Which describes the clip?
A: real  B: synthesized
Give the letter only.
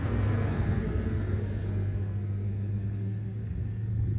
B